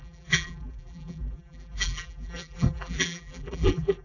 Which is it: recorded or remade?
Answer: remade